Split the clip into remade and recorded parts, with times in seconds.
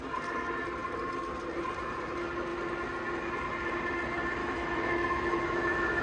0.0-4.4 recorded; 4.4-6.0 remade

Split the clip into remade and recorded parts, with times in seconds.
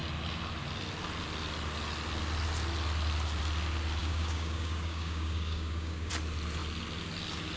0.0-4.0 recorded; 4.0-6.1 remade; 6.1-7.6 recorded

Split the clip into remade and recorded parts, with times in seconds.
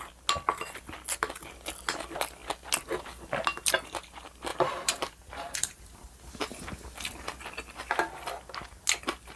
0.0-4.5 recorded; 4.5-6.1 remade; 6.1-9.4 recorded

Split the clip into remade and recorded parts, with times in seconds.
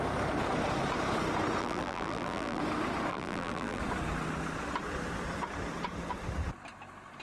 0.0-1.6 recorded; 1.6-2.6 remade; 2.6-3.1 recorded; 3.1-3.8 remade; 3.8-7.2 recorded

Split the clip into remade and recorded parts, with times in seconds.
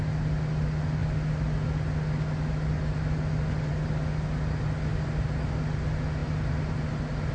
0.0-7.3 recorded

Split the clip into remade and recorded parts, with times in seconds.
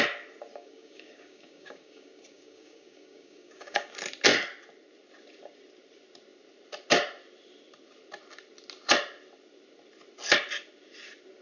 0.0-0.5 recorded; 0.5-3.9 remade; 3.9-11.4 recorded